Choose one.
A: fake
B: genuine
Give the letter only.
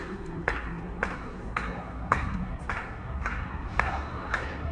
A